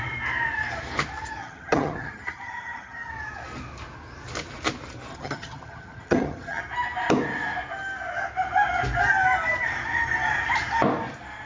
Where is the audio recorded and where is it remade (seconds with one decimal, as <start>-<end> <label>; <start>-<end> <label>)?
0.0-1.4 recorded; 1.4-3.1 remade; 3.1-5.1 recorded; 5.1-6.6 remade; 6.6-11.5 recorded